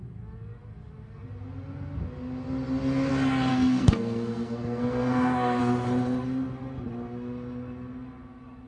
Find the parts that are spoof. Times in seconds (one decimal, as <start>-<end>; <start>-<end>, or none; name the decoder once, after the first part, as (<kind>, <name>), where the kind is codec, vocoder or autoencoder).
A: 3.5-5.6 (codec, SNAC)